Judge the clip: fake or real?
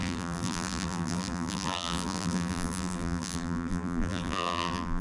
fake